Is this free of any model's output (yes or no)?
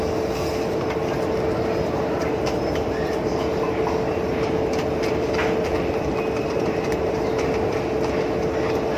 yes